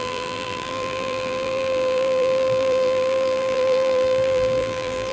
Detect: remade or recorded remade